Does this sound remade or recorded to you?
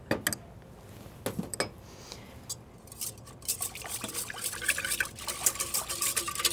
recorded